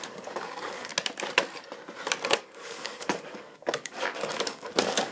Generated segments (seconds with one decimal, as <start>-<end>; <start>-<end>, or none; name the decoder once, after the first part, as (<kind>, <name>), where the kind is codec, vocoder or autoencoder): 0.0-0.9 (codec, DAC); 2.3-5.1